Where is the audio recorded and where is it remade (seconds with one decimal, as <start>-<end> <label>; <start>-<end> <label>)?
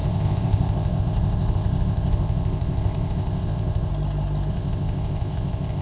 0.0-3.9 remade; 3.9-4.5 recorded; 4.5-5.8 remade